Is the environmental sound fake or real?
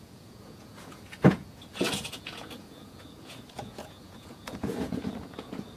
fake